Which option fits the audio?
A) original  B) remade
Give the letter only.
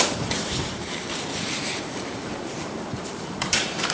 B